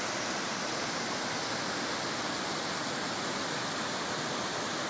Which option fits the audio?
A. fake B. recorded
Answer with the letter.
B